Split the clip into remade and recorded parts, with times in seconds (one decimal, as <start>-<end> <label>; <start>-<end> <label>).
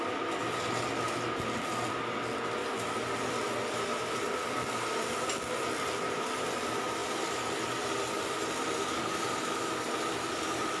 0.0-10.8 recorded